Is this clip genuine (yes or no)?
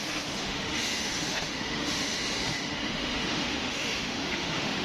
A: no